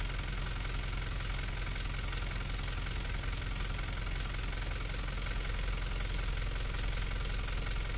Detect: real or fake real